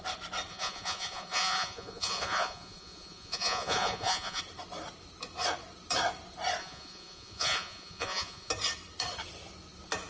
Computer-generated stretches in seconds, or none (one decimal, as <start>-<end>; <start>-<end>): 0.5-4.4; 6.6-8.5